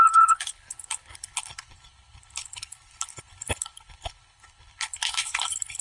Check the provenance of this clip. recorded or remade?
remade